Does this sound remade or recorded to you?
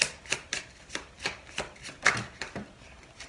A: remade